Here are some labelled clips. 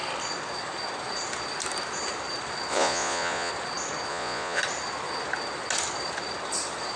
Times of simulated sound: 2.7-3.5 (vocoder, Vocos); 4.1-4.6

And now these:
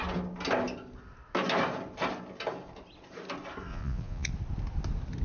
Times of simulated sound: 3.7-4.3 (vocoder, Vocos)